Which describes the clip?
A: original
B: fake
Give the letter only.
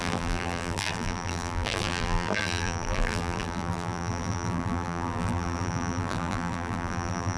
B